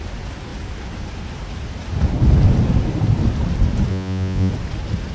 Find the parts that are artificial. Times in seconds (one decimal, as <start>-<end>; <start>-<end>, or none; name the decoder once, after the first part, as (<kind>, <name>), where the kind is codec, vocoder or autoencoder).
3.9-4.5 (vocoder, Vocos)